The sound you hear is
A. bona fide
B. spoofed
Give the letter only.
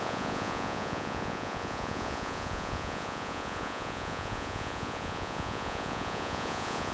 B